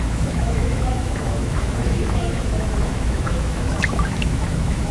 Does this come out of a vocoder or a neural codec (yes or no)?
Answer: yes